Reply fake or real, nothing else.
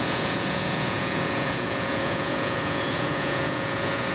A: fake